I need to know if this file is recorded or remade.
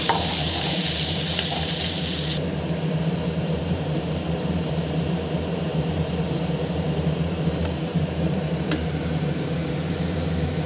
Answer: remade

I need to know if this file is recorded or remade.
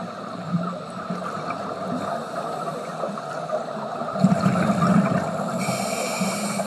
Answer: recorded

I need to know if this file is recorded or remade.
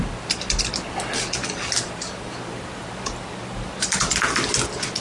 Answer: remade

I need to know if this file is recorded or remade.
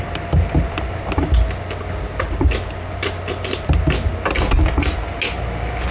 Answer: recorded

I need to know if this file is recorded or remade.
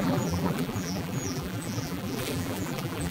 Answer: remade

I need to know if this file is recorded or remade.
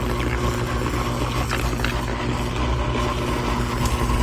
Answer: recorded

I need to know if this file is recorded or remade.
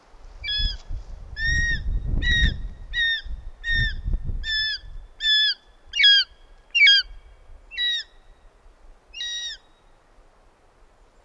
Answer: recorded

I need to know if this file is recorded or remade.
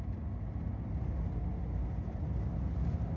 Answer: recorded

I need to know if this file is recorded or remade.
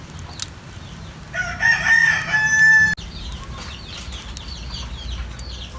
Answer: recorded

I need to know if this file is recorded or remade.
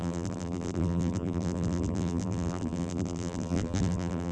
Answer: remade